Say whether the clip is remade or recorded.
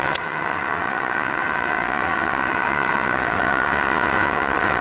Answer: remade